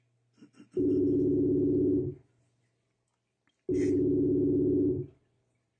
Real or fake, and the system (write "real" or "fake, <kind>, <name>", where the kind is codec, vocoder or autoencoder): real